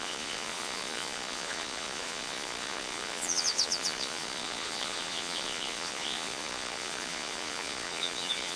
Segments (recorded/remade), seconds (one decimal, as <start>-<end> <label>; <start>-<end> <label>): 0.0-8.6 remade